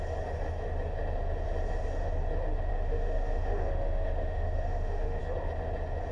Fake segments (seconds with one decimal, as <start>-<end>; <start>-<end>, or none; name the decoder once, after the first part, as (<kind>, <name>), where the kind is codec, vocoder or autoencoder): 2.7-5.2 (autoencoder, DAC-VAE)